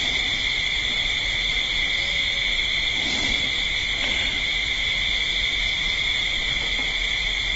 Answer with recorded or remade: recorded